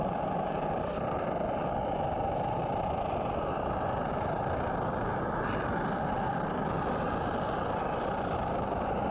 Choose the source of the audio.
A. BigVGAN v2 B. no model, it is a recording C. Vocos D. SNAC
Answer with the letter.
B